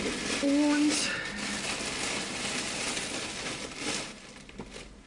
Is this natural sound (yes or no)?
yes